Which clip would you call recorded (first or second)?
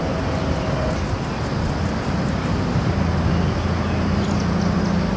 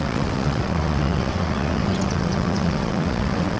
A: first